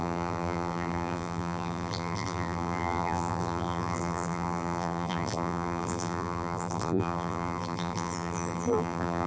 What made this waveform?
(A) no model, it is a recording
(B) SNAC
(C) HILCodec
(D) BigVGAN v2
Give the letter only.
D